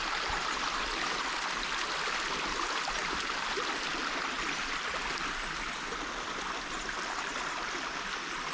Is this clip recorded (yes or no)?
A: yes